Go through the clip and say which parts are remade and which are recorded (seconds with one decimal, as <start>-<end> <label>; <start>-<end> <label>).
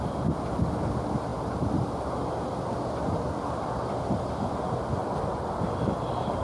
0.0-1.3 recorded; 1.3-3.6 remade; 3.6-6.4 recorded